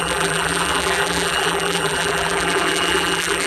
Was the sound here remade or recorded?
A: remade